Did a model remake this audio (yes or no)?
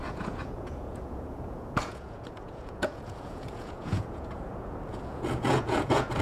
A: yes